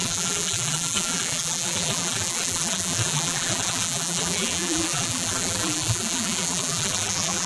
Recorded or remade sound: remade